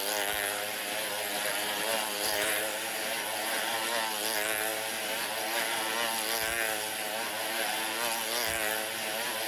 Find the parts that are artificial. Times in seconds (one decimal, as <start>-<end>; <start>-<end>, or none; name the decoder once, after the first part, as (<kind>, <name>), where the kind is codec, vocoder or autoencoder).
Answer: 1.9-3.6 (vocoder, BigVGAN v2)

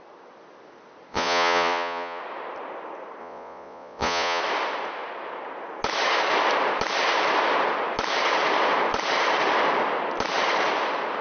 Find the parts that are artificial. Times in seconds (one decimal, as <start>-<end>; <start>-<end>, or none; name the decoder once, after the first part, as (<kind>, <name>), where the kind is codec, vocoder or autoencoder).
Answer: 1.1-2.2 (vocoder, Vocos); 3.2-4.4

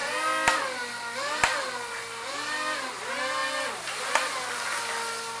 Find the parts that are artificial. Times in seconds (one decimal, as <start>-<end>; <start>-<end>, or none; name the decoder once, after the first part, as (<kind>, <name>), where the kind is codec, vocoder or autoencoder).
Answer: none